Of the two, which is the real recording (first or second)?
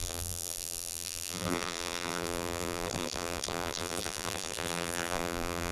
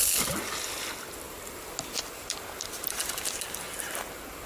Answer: second